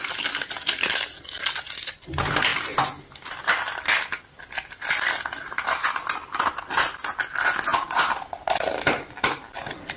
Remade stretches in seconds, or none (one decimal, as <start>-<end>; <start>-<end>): none